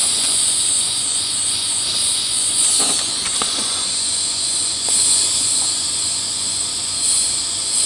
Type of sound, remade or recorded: remade